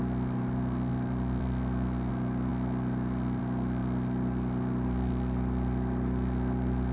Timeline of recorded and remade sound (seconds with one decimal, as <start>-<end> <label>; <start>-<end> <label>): 0.0-0.9 recorded; 0.9-2.1 remade; 2.1-3.8 recorded; 3.8-5.1 remade; 5.1-6.9 recorded